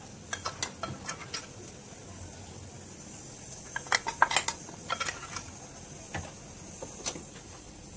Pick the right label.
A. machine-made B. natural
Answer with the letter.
B